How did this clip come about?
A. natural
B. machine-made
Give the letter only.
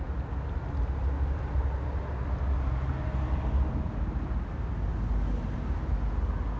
A